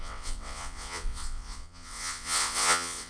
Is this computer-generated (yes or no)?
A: yes